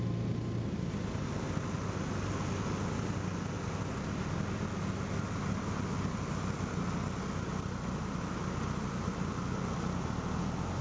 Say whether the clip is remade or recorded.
recorded